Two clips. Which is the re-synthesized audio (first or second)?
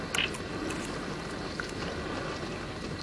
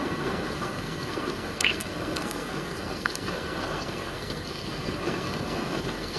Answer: second